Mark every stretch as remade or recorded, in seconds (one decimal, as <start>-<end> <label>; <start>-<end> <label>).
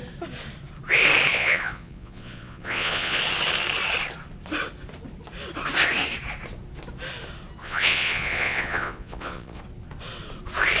0.0-1.3 recorded; 1.3-3.2 remade; 3.2-7.6 recorded; 7.6-9.6 remade; 9.6-10.8 recorded